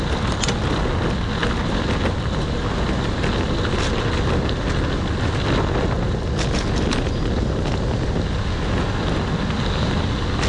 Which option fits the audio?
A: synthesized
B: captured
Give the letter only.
B